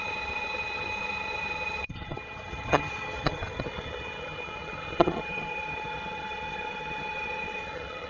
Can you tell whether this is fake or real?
fake